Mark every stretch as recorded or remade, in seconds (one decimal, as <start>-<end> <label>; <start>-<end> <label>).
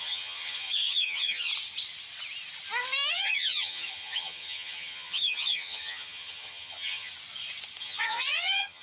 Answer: 0.0-1.5 remade; 1.5-3.1 recorded; 3.1-7.1 remade; 7.1-7.8 recorded; 7.8-8.8 remade